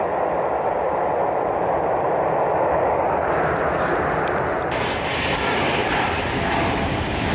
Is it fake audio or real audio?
real